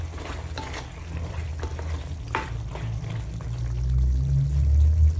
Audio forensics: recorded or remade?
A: recorded